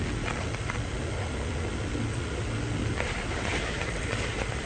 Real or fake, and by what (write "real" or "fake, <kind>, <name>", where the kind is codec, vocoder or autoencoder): real